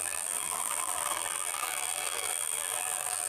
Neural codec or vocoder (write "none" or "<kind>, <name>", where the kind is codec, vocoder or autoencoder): vocoder, BigVGAN v2